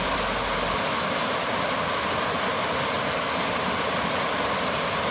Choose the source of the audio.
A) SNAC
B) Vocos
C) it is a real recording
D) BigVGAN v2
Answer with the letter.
C